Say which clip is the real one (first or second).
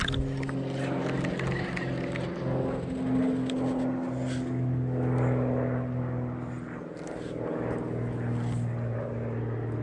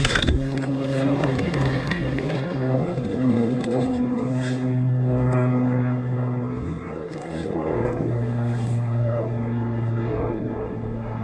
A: first